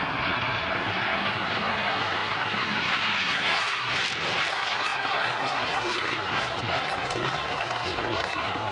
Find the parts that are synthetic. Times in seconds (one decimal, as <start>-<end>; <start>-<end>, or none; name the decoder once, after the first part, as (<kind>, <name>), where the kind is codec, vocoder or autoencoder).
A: 0.0-4.0 (codec, SNAC); 4.5-8.7